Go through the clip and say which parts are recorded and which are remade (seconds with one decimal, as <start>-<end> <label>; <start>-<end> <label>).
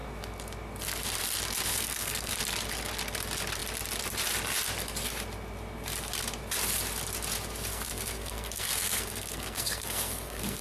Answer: 0.0-1.7 recorded; 1.7-2.3 remade; 2.3-7.7 recorded; 7.7-10.6 remade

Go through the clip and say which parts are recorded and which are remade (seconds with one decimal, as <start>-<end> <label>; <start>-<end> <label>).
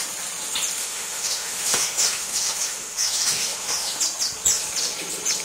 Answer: 0.0-0.8 recorded; 0.8-4.0 remade; 4.0-5.4 recorded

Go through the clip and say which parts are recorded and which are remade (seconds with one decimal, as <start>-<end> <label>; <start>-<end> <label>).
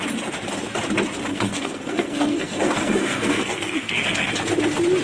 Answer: 0.0-1.3 recorded; 1.3-4.3 remade; 4.3-5.0 recorded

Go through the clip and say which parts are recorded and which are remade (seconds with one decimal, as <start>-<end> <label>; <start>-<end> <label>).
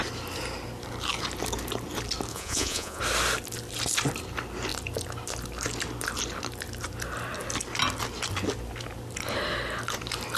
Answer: 0.0-2.3 recorded; 2.3-3.0 remade; 3.0-10.4 recorded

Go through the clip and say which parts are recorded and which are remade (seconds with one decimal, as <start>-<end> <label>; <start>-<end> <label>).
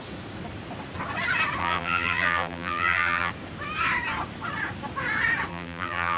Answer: 0.0-1.6 recorded; 1.6-3.3 remade; 3.3-5.5 recorded; 5.5-6.2 remade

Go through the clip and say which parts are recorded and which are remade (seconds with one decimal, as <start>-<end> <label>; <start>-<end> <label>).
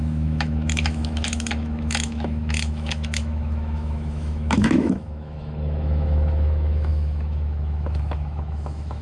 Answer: 0.0-9.0 remade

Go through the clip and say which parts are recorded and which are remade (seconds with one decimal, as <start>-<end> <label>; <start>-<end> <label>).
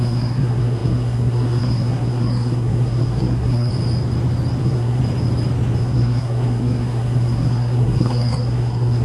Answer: 0.0-3.7 remade; 3.7-4.6 recorded; 4.6-5.0 remade; 5.0-5.8 recorded; 5.8-9.0 remade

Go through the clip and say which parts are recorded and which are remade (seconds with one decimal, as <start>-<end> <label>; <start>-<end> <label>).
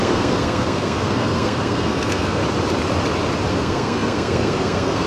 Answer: 0.0-2.4 remade; 2.4-3.5 recorded; 3.5-5.1 remade